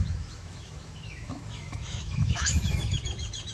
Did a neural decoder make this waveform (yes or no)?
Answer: yes